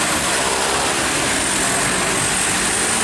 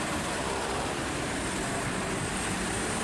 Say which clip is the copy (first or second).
second